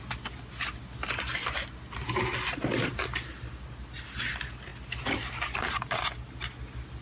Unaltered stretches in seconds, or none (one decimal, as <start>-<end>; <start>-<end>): 0.0-7.0